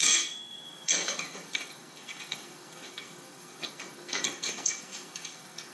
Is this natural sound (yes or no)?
no